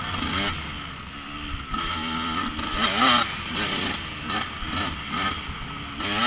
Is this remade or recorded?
recorded